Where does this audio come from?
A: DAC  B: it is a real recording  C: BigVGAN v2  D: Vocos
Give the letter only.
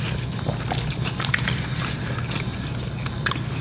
B